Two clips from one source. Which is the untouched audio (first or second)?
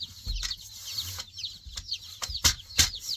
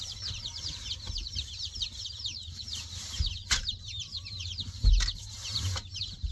first